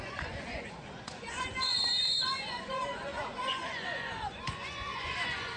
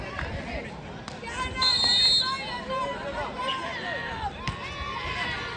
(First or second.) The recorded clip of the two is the second